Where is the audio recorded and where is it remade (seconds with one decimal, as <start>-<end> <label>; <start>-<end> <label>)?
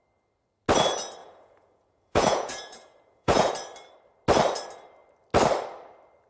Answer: 0.0-1.2 recorded; 1.2-3.5 remade; 3.5-6.3 recorded